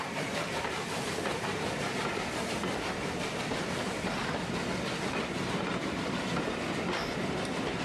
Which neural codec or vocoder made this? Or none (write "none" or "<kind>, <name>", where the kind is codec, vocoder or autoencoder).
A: vocoder, BigVGAN v2